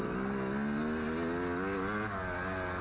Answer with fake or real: real